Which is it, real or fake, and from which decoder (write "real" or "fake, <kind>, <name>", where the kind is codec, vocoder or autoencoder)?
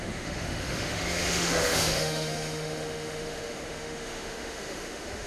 fake, autoencoder, DAC-VAE